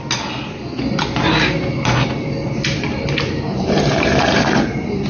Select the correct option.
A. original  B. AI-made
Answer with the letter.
A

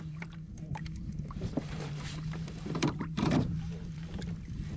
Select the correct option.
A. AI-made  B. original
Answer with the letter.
A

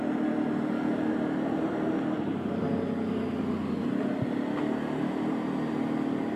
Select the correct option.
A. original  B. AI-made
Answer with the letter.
A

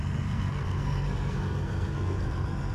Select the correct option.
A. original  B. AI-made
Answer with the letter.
B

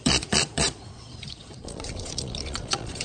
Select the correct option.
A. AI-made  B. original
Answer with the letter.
A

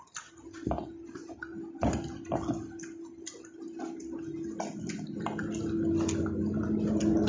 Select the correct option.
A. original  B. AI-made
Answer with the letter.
A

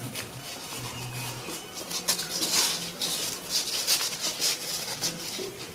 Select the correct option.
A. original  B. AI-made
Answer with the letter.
A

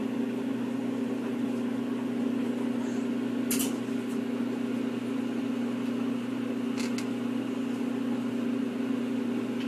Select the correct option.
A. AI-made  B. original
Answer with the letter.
B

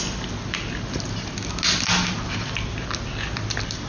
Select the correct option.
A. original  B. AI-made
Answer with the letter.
A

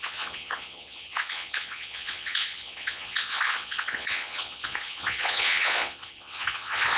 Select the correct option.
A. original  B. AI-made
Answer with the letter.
B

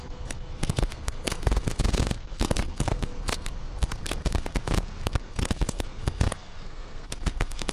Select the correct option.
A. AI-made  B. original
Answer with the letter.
A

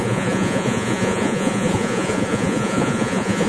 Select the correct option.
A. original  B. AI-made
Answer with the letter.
B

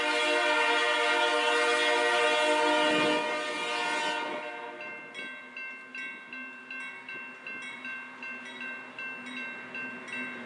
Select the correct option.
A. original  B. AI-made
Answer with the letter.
A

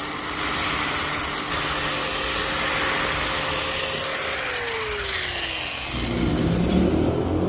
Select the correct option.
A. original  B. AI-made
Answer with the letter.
A